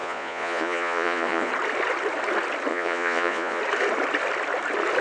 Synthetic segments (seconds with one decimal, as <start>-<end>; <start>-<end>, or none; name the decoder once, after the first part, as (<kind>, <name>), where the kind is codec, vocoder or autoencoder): 0.0-1.5 (vocoder, Vocos); 2.7-3.6